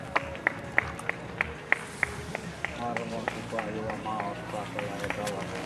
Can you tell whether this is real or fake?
real